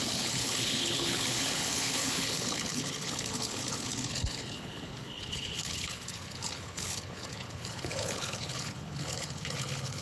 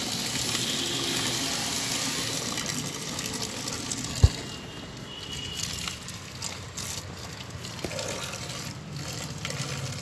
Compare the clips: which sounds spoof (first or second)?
first